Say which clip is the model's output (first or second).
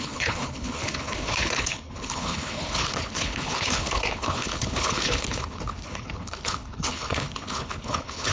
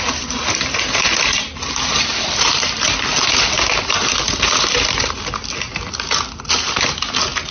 first